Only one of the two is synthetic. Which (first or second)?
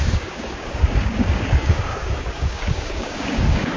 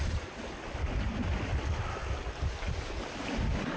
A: first